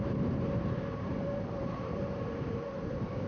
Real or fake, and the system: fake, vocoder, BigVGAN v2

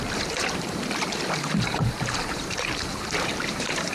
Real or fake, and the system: fake, vocoder, BigVGAN v2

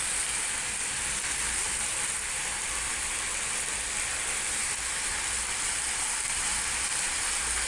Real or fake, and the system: real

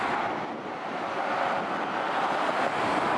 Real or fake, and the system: real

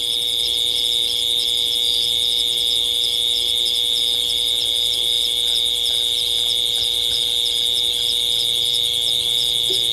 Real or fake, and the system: real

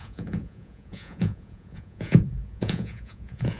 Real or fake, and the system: fake, vocoder, Vocos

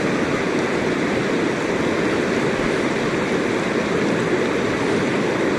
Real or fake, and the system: real